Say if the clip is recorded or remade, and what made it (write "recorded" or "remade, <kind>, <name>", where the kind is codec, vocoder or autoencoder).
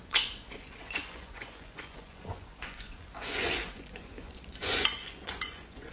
remade, vocoder, Vocos